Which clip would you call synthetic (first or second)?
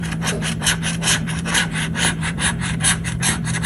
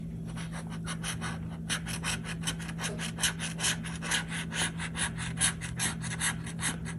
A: first